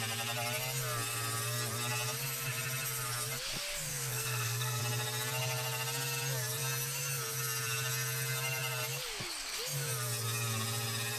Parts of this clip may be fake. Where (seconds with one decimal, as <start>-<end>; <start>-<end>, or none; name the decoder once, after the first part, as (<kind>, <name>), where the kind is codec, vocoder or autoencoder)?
3.9-4.8 (codec, SNAC)